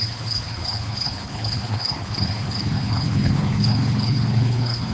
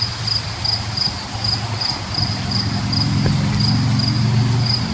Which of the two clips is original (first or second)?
second